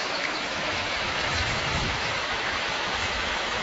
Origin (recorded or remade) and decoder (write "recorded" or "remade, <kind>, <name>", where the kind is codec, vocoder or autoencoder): remade, autoencoder, DAC-VAE